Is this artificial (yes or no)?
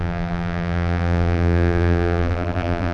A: yes